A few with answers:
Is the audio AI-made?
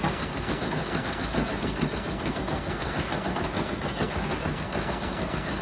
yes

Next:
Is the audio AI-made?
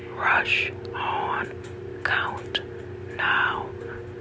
no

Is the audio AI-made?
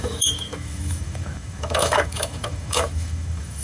yes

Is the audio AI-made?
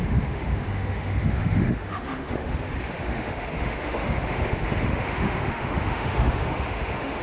yes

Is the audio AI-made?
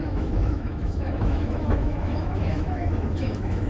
yes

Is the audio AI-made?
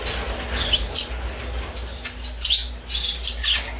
no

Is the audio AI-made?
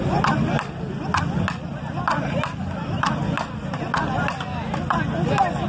no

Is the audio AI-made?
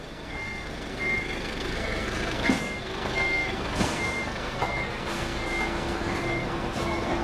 yes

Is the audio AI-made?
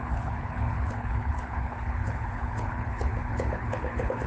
yes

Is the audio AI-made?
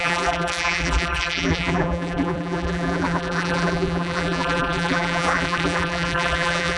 yes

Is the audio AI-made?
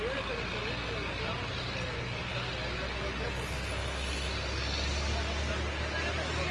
no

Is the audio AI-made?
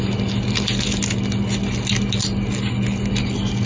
no